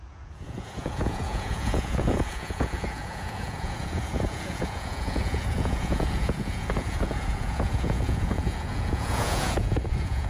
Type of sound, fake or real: fake